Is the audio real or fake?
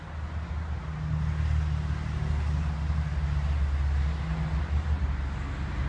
real